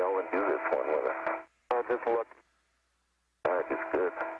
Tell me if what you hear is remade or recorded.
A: recorded